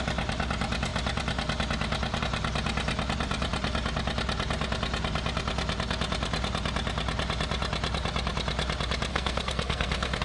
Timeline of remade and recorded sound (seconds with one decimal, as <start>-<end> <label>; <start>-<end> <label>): 0.0-9.1 recorded; 9.1-10.2 remade